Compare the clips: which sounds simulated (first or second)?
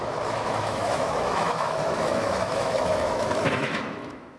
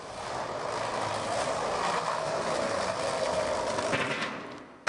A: first